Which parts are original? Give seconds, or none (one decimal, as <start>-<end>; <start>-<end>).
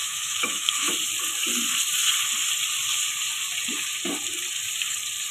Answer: 0.9-5.3